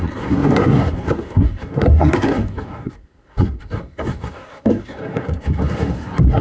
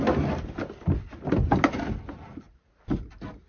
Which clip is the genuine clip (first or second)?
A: second